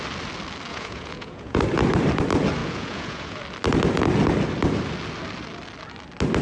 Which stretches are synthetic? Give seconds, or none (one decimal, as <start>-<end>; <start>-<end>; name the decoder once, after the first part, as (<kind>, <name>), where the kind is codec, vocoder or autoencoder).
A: 0.7-1.6 (vocoder, Vocos); 2.6-3.4